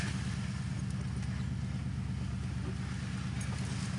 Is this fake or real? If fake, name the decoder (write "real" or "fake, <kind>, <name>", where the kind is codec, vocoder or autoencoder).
real